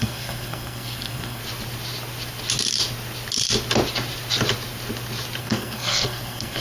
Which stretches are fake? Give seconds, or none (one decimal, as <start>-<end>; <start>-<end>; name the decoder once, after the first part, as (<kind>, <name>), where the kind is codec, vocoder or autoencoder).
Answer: 0.0-1.4 (codec, SNAC); 5.4-6.6